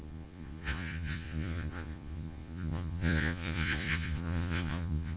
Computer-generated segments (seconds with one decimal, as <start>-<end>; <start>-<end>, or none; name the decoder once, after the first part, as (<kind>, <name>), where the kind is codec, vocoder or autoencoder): 0.0-5.2 (vocoder, Vocos)